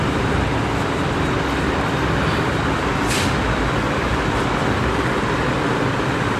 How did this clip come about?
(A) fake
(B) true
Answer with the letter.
B